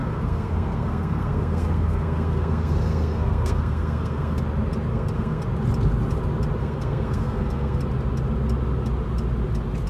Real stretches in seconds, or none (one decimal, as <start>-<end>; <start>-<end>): 4.4-4.9; 5.4-6.6; 7.8-9.9